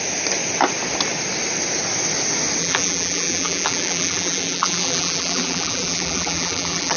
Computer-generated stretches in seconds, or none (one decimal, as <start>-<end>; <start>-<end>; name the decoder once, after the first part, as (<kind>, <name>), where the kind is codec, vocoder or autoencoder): 2.6-7.0 (vocoder, BigVGAN v2)